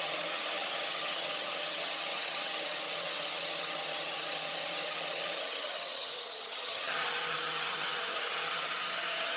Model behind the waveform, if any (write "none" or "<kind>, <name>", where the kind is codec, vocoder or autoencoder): vocoder, HiFi-GAN